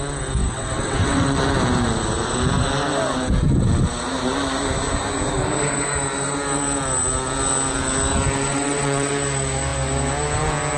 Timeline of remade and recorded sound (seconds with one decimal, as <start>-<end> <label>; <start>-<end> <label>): 0.0-0.4 recorded; 0.4-1.4 remade; 1.4-8.5 recorded; 8.5-9.1 remade; 9.1-10.8 recorded